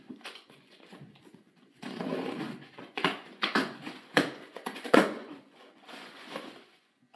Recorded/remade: remade